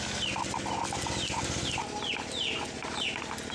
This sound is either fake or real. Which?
real